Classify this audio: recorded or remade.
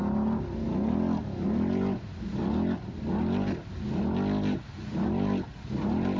recorded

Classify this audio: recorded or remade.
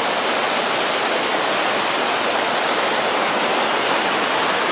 recorded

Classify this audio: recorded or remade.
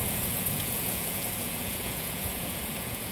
remade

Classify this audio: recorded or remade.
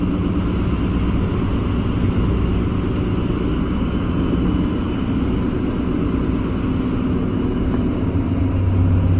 recorded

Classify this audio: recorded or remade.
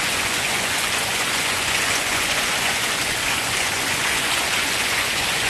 remade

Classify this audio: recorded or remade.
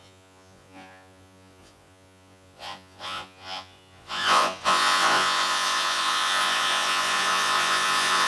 remade